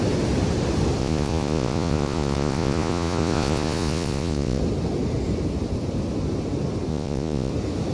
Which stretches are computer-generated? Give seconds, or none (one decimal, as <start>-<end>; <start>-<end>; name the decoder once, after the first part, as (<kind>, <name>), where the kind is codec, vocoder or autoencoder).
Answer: 1.0-4.6 (vocoder, Vocos); 6.9-7.5

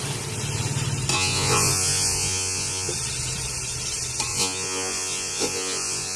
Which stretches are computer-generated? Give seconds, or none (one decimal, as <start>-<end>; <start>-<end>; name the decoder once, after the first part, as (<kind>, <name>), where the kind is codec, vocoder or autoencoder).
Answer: 1.1-2.9 (vocoder, Vocos); 4.3-6.2

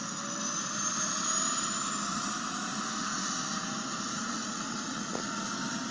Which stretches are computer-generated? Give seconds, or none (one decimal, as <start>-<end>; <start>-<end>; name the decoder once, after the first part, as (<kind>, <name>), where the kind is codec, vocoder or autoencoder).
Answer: 2.7-3.3 (vocoder, Vocos); 4.2-5.4

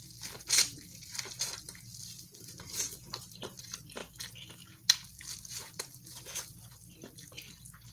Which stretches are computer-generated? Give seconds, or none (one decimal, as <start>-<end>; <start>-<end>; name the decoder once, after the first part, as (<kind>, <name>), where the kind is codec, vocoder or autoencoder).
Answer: none